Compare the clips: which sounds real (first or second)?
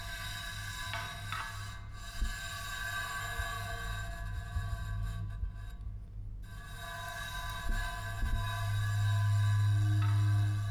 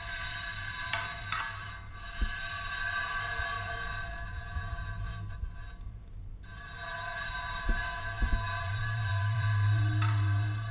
first